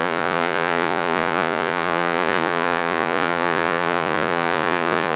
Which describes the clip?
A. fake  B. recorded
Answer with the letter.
A